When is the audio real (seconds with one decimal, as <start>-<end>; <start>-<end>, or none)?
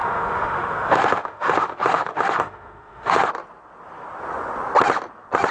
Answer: 3.3-5.5